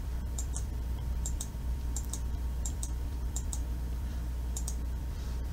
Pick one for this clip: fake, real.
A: fake